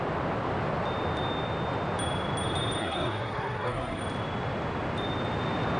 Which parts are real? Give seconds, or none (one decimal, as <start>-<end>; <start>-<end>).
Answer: 0.0-2.8; 4.0-5.8